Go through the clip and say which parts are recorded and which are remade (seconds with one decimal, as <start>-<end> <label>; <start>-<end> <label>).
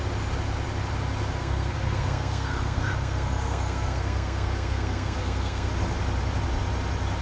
0.0-1.4 recorded; 1.4-5.7 remade; 5.7-7.2 recorded